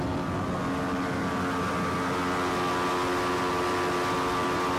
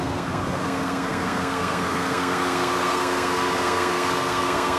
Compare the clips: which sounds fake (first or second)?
second